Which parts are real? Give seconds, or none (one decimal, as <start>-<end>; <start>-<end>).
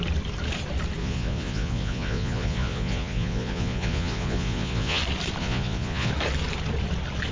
0.0-1.0; 5.0-5.4; 6.1-7.3